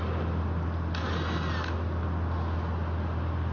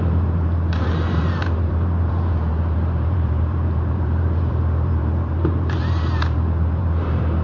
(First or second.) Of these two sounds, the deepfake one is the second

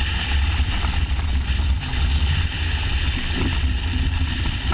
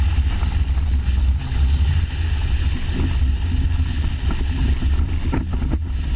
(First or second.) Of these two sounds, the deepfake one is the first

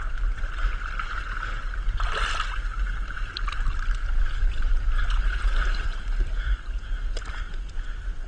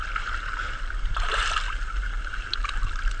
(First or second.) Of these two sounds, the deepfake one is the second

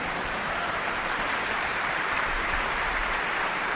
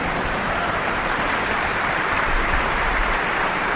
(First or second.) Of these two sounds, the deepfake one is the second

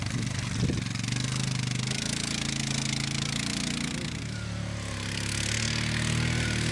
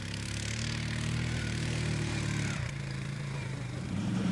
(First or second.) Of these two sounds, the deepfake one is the second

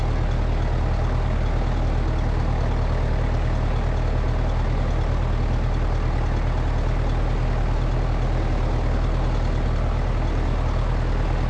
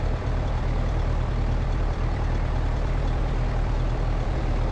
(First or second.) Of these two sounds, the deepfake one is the second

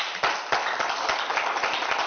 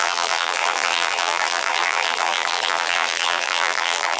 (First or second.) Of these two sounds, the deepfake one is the second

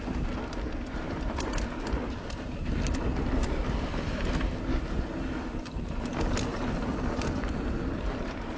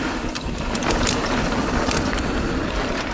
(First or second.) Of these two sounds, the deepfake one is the second